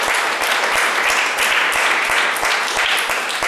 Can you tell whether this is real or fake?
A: real